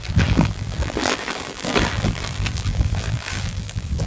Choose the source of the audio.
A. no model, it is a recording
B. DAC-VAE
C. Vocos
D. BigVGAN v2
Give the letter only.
D